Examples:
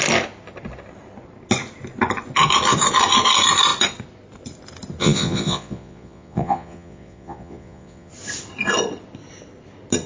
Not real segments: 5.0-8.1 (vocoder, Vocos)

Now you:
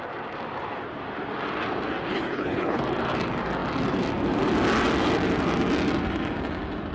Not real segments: 2.1-2.8 (codec, HILCodec)

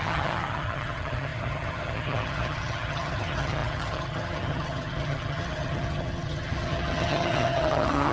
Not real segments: 0.0-8.1 (vocoder, HiFi-GAN)

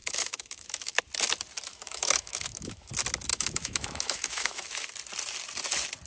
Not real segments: 0.0-1.0 (autoencoder, DAC-VAE); 1.7-2.9; 3.3-4.7

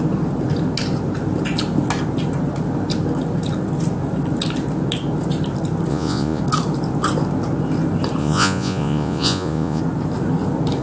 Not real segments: 5.9-6.4 (vocoder, Vocos); 8.2-9.8

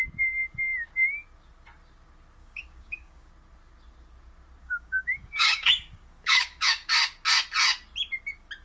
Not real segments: 2.4-3.3 (codec, DAC); 4.6-7.0

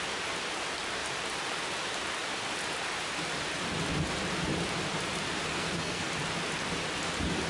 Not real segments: 5.5-6.1 (codec, SNAC)